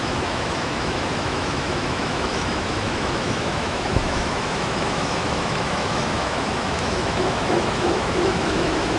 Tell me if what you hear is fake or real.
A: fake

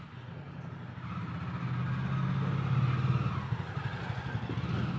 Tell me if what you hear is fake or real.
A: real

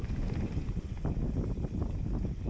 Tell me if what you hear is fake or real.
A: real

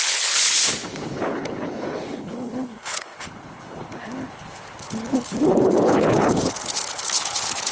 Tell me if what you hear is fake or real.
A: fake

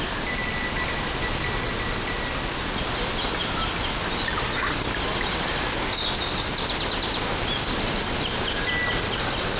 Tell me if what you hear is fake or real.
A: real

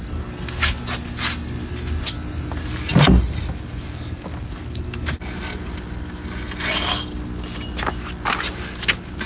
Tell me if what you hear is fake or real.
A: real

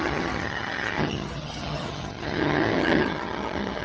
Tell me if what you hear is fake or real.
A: fake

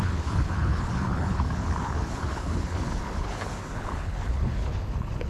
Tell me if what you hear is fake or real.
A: fake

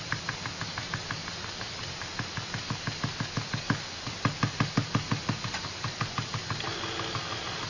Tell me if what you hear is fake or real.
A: real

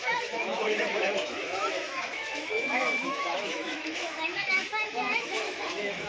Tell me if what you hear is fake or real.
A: fake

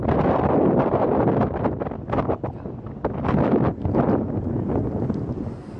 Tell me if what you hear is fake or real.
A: real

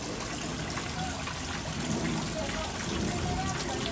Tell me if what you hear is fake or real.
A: real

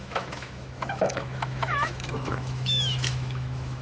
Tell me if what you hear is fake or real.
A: fake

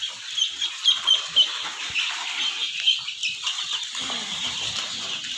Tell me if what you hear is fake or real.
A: real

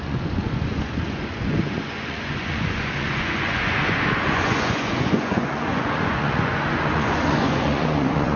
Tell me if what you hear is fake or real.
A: fake